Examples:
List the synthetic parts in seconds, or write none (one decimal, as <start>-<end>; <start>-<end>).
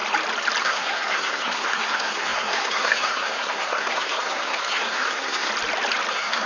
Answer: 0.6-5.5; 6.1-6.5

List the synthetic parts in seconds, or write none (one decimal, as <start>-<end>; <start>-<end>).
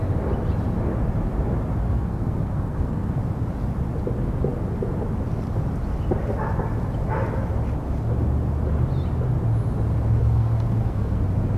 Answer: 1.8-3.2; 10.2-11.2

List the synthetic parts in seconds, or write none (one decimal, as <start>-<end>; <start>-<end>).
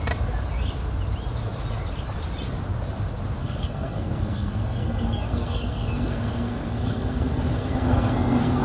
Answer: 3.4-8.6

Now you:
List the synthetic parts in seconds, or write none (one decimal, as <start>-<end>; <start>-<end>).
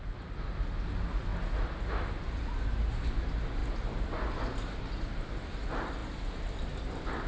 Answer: none